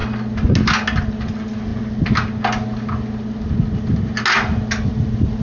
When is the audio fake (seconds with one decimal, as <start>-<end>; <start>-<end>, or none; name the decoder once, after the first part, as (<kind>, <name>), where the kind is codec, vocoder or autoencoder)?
none